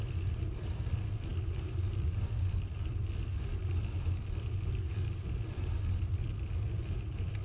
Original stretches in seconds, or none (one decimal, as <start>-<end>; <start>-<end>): 0.0-7.4